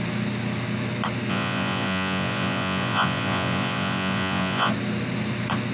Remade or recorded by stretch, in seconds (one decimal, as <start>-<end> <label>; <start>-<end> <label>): 0.0-1.3 recorded; 1.3-4.7 remade; 4.7-5.7 recorded